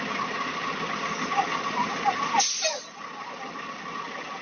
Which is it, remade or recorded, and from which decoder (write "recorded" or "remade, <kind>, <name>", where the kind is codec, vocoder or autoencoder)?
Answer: recorded